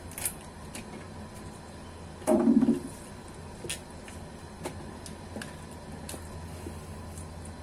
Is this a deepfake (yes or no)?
no